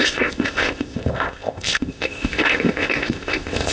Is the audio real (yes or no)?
no